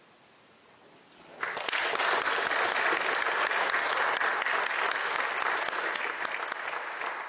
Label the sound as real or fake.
real